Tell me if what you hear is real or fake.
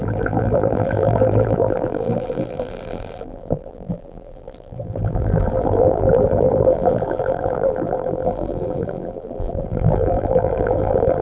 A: fake